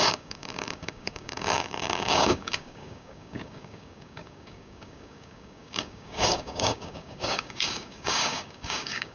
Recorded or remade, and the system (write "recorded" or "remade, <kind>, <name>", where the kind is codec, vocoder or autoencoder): remade, codec, DAC